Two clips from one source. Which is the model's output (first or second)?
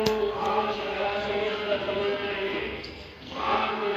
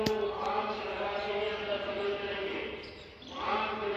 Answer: first